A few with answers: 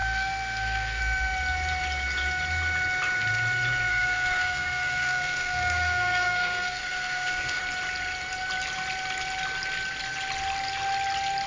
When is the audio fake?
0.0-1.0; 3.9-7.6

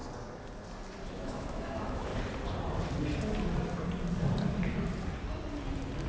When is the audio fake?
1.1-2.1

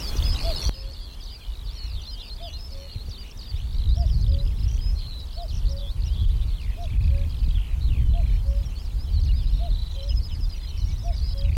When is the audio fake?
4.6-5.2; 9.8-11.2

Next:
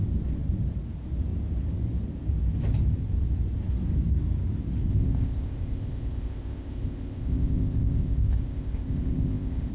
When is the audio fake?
4.9-9.7

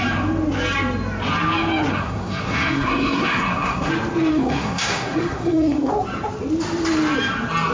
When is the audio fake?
1.9-3.9; 4.3-5.9

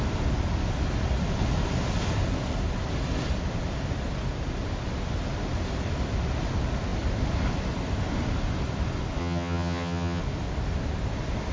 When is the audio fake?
9.2-10.2

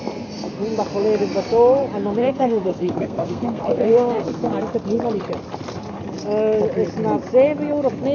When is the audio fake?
2.2-4.5